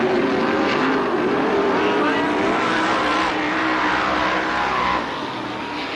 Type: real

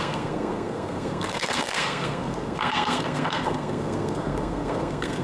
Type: fake